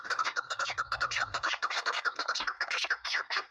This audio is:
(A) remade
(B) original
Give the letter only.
A